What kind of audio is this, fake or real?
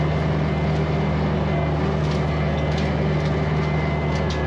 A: real